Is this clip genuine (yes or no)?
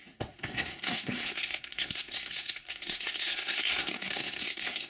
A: no